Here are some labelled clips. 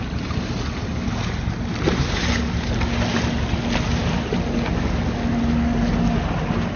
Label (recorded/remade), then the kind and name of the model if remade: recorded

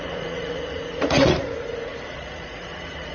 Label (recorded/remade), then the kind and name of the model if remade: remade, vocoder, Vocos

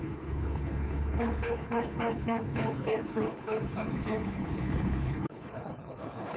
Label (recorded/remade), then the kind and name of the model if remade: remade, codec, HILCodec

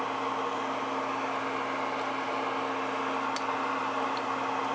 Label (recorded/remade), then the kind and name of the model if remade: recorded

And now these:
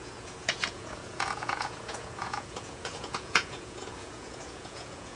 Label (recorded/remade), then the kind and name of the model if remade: remade, vocoder, Vocos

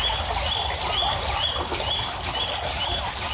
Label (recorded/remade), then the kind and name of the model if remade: recorded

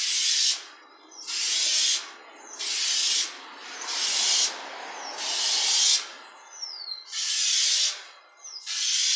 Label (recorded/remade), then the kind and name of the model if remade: recorded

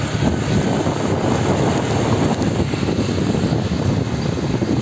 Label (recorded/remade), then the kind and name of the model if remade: recorded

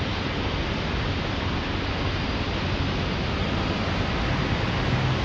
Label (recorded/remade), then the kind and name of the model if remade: recorded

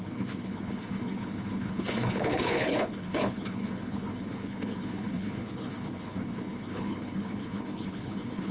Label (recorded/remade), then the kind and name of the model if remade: remade, codec, HILCodec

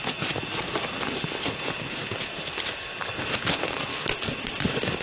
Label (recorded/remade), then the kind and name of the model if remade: recorded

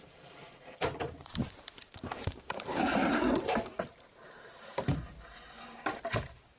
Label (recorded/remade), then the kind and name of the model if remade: remade, vocoder, BigVGAN v2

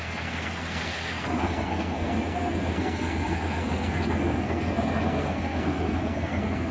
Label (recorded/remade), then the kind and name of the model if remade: remade, codec, SNAC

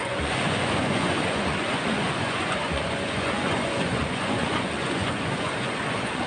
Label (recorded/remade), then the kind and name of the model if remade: remade, vocoder, Vocos